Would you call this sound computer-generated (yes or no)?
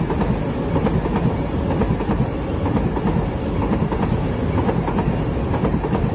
no